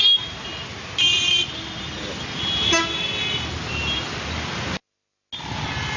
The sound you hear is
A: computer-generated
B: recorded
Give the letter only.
B